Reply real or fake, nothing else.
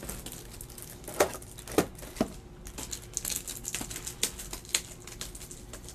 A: real